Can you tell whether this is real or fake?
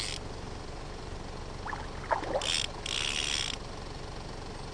real